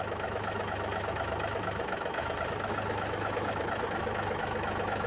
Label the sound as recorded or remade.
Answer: remade